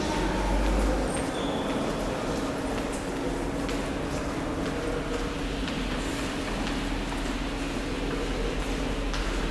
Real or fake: real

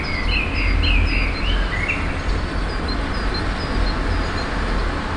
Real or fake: real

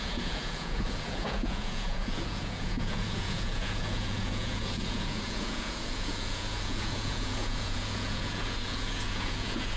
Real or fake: fake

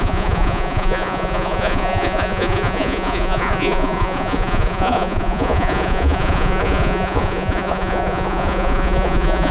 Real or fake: fake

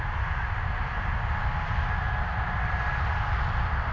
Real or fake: real